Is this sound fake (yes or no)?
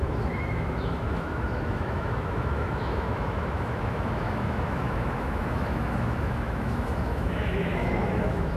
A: yes